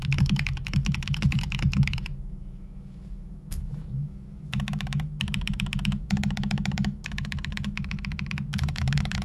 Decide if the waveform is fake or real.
fake